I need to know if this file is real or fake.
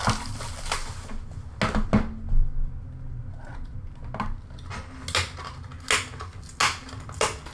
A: real